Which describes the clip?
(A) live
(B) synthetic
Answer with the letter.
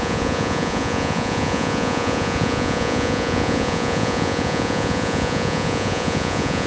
B